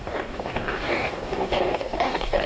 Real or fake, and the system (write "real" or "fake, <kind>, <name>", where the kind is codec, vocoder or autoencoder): fake, codec, DAC